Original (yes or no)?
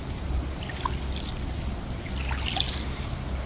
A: yes